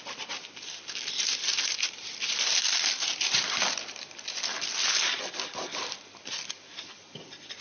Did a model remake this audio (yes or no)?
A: yes